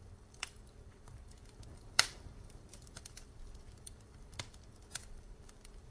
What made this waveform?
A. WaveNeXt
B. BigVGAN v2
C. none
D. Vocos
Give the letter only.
B